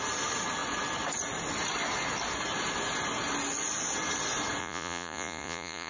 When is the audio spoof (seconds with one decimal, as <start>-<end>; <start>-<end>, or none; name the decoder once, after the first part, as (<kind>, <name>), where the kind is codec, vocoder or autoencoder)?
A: 4.6-5.9 (vocoder, Vocos)